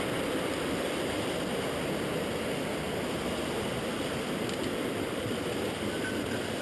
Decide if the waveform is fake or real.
real